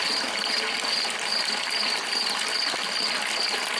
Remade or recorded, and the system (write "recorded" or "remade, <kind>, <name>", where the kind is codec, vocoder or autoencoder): recorded